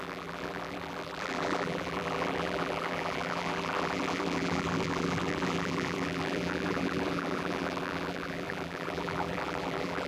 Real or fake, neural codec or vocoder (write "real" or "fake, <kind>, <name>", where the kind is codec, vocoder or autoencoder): fake, vocoder, BigVGAN v2